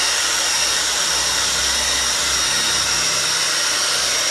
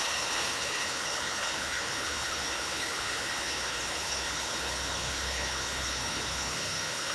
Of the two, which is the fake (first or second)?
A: second